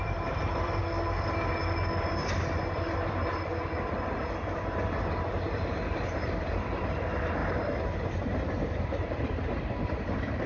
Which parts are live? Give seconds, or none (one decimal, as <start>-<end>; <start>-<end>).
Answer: 0.8-5.1; 7.4-8.2